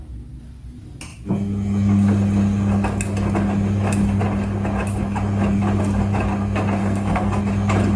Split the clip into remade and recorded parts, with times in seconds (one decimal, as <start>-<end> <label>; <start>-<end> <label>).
0.0-6.8 recorded; 6.8-7.4 remade; 7.4-8.0 recorded